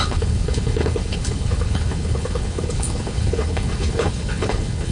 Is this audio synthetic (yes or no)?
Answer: yes